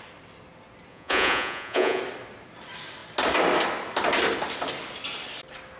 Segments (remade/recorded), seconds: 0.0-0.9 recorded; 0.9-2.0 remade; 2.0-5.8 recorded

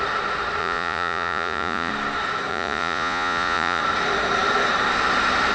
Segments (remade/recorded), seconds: 0.0-0.6 recorded; 0.6-1.9 remade; 1.9-2.5 recorded; 2.5-3.8 remade; 3.8-5.5 recorded

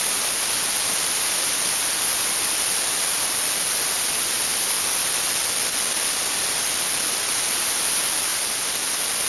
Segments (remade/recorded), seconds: 0.0-9.3 recorded

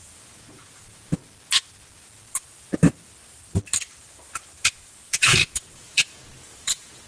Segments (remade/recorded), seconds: 0.0-1.2 remade; 1.2-4.7 recorded; 4.7-7.1 remade

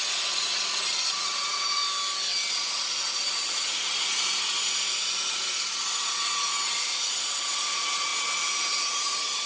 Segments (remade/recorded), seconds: 0.0-1.8 remade; 1.8-2.5 recorded; 2.5-9.5 remade

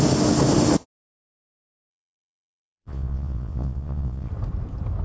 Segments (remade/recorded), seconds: 0.0-1.9 recorded; 1.9-4.3 remade; 4.3-5.0 recorded

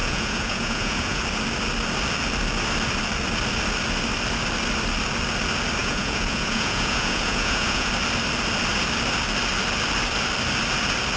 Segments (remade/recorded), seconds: 0.0-1.2 remade; 1.2-5.8 recorded; 5.8-7.9 remade; 7.9-11.2 recorded